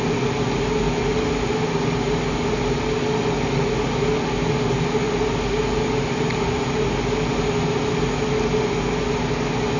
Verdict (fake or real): real